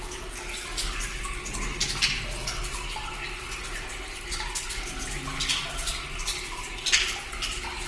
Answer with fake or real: real